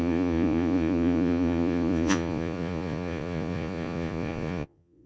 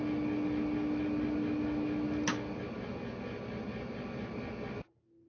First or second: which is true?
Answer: second